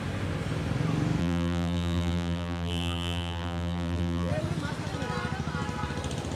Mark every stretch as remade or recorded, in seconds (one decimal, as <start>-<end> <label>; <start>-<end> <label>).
0.0-1.2 recorded; 1.2-4.3 remade; 4.3-6.3 recorded